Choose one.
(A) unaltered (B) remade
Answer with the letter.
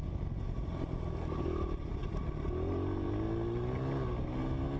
A